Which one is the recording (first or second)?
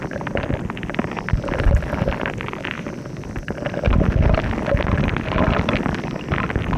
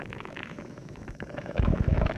first